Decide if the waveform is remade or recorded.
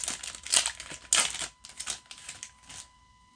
recorded